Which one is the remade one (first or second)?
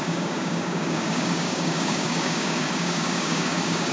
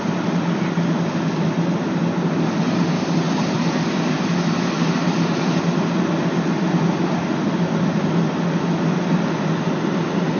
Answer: first